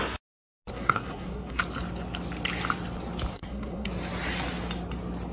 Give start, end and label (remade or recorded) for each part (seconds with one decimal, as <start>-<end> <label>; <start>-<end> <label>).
0.0-0.7 recorded; 0.7-1.6 remade; 1.6-3.3 recorded; 3.3-3.9 remade; 3.9-5.3 recorded